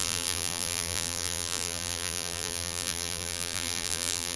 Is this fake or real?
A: fake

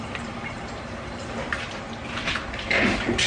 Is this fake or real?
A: fake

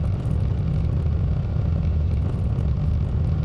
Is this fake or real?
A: fake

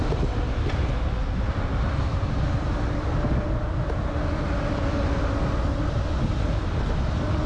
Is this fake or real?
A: real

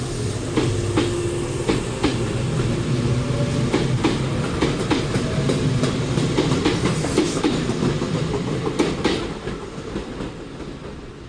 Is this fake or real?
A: real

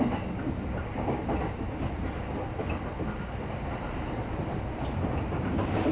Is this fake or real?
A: real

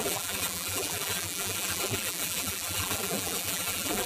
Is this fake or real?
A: fake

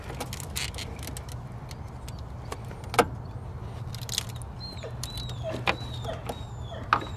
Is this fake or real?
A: real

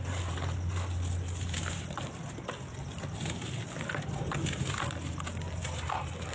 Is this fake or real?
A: real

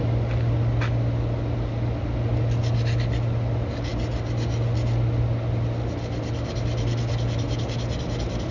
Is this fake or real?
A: real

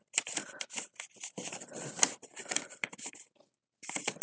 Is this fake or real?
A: fake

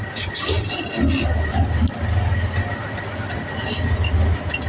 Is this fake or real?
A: real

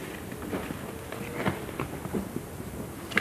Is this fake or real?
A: real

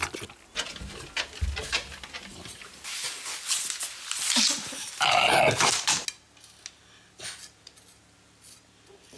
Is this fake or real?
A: real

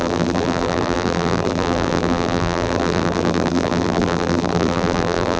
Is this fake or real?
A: fake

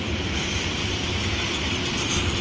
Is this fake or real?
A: real